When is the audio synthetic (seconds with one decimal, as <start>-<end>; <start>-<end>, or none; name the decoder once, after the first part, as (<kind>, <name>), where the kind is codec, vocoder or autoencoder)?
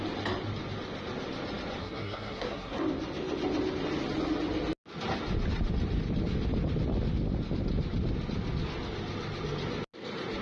1.8-2.8 (codec, SNAC)